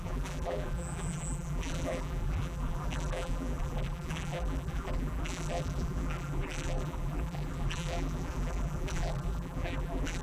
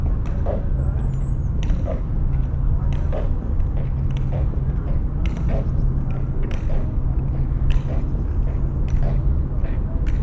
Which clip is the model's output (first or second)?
first